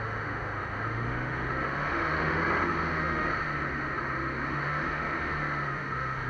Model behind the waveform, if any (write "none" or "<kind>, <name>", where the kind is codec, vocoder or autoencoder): autoencoder, DAC-VAE